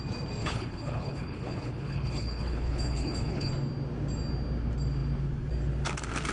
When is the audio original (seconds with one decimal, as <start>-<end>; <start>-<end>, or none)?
0.0-0.4; 3.5-6.3